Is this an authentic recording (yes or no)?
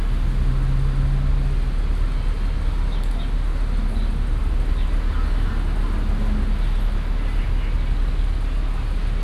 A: yes